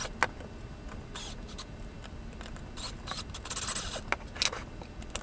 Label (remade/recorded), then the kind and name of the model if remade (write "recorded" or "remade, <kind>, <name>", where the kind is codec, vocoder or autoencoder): recorded